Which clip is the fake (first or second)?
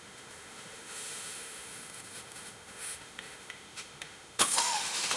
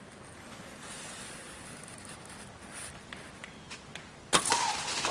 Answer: first